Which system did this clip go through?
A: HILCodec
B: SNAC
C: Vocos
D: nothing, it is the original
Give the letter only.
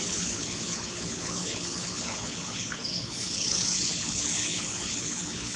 A